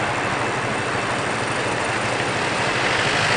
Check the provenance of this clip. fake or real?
real